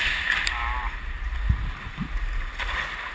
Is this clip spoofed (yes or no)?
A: no